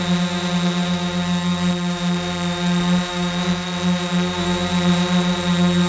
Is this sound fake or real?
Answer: real